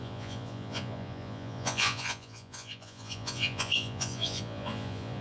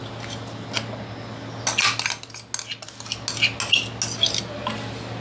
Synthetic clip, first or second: first